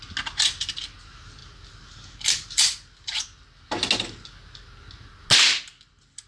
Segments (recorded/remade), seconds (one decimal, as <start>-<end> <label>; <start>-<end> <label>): 0.0-6.3 recorded